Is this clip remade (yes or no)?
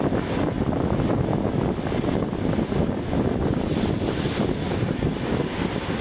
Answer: no